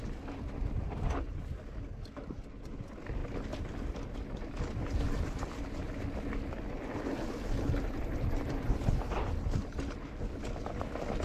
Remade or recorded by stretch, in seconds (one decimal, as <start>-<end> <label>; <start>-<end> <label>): 0.0-11.2 recorded